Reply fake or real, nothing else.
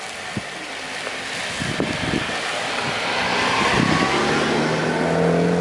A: real